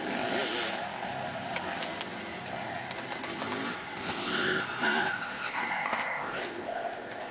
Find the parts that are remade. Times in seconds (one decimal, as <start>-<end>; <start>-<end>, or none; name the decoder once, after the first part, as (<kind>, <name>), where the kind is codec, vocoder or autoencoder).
4.0-4.6 (codec, ZipCodec); 5.0-7.3